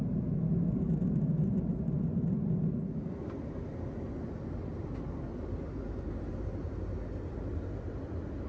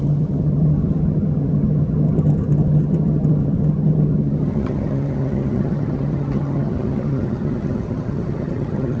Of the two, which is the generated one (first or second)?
second